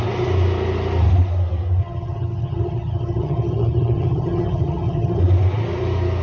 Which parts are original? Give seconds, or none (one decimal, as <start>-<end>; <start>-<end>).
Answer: 0.0-1.8; 5.2-6.2